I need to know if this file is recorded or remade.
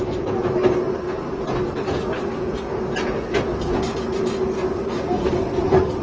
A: recorded